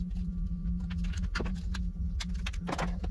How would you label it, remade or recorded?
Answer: recorded